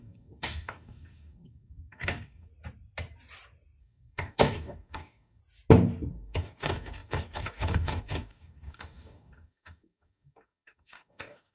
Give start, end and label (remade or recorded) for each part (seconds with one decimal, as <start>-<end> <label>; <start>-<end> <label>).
0.0-2.5 remade; 2.5-3.8 recorded; 3.8-5.4 remade; 5.4-6.1 recorded; 6.1-11.5 remade